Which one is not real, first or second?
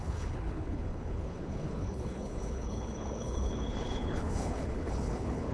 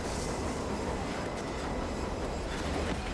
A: first